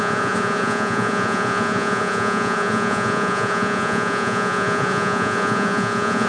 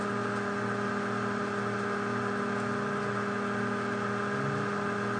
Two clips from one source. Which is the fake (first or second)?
first